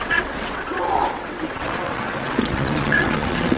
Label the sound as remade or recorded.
remade